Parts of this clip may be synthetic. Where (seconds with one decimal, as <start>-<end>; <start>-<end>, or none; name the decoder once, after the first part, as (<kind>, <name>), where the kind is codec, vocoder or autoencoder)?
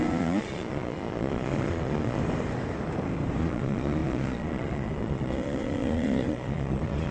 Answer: 0.0-2.2 (vocoder, Vocos); 3.4-7.1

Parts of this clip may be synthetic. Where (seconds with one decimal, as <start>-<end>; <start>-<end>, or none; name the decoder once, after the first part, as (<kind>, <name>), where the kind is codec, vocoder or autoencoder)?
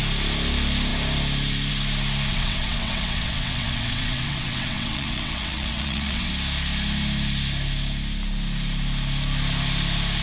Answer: 2.3-6.3 (vocoder, WaveNeXt)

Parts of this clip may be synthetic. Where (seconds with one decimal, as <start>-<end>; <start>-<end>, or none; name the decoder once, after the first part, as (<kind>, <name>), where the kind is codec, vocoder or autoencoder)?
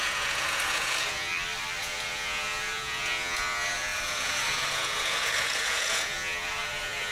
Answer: 0.0-1.3 (vocoder, Vocos); 1.8-7.1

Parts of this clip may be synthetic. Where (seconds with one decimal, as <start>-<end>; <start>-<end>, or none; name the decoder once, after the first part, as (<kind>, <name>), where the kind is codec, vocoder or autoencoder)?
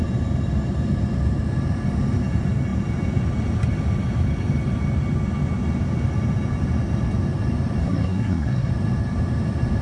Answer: 7.8-8.7 (codec, SNAC)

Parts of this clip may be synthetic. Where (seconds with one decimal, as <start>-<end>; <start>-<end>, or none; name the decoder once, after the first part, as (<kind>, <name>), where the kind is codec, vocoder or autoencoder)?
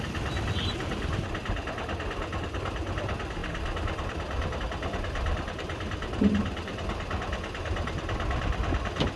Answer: none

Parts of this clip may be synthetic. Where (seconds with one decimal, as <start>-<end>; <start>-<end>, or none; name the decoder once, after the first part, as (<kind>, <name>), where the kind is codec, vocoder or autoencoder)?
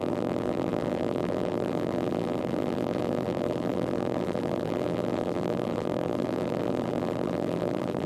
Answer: 0.0-8.1 (vocoder, BigVGAN v2)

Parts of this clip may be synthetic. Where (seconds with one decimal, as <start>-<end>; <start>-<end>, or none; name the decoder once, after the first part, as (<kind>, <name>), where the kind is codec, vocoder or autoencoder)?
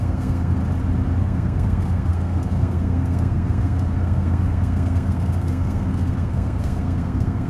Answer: 0.0-0.6 (codec, SNAC); 1.2-7.5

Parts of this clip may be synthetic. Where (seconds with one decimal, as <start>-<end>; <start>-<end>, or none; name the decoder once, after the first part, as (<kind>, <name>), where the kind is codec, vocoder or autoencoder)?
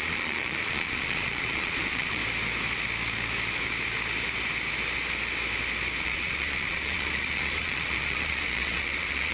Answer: 0.0-2.2 (vocoder, Vocos); 6.0-9.3